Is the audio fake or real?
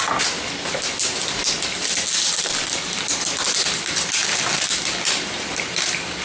real